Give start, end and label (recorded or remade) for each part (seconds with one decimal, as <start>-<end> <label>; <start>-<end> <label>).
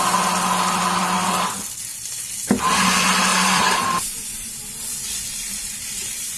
0.0-3.3 recorded; 3.3-4.5 remade; 4.5-6.4 recorded